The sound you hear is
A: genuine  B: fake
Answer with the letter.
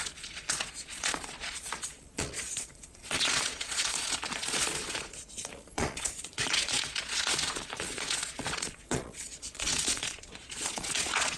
B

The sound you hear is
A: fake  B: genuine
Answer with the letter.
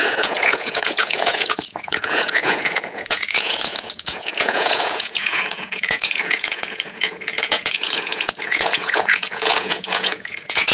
A